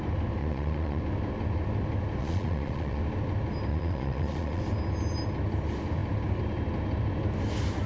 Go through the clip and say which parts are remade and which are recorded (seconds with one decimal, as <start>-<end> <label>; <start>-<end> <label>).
0.0-0.4 recorded; 0.4-1.0 remade; 1.0-2.2 recorded; 2.2-3.0 remade; 3.0-3.7 recorded; 3.7-4.6 remade; 4.6-7.9 recorded